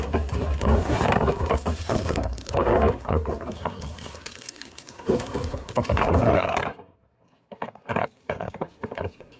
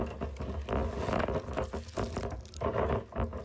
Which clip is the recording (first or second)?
second